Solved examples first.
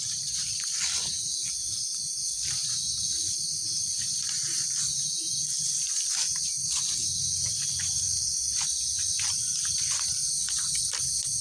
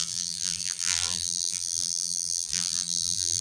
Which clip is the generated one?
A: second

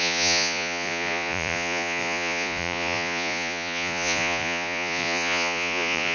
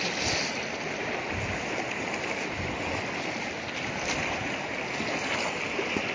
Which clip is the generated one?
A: first